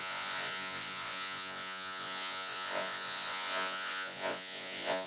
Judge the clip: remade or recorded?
remade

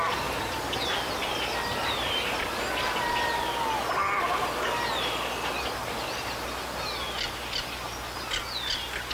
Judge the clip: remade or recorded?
recorded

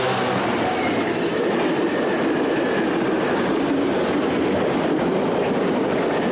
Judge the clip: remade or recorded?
recorded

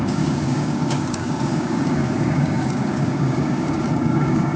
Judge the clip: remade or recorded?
remade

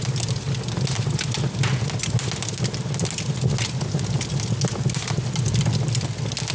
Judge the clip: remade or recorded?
recorded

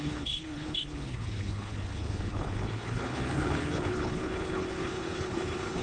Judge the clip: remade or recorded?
remade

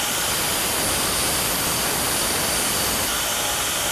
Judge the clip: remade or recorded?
recorded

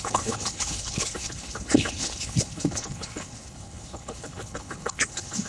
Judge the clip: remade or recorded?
remade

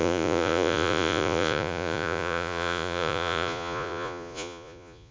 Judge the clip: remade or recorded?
remade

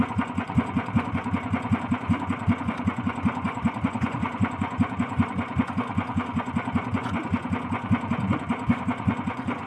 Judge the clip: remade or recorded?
remade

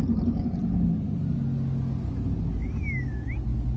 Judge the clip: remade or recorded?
recorded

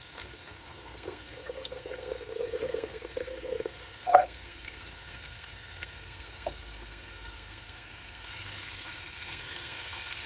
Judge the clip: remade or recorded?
remade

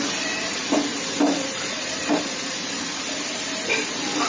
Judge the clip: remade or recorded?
recorded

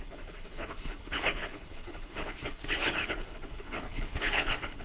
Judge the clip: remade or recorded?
remade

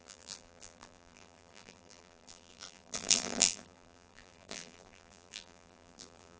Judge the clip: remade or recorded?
remade